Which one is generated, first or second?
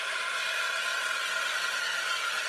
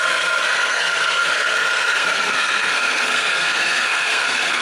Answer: second